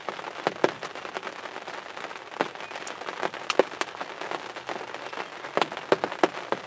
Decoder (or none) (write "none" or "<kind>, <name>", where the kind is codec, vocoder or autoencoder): none